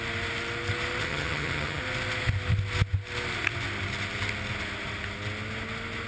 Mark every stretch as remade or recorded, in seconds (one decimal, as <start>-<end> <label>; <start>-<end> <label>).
0.0-1.0 recorded; 1.0-1.8 remade; 1.8-6.1 recorded